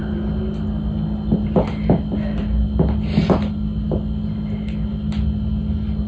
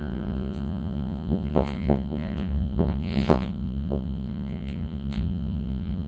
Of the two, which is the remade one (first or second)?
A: second